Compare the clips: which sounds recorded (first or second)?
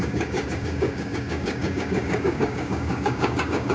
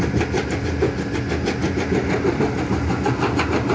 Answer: second